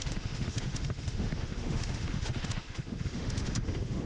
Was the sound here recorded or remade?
remade